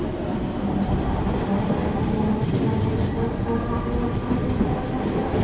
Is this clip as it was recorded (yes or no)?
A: yes